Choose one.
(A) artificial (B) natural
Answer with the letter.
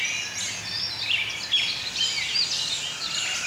B